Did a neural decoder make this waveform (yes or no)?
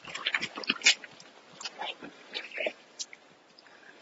no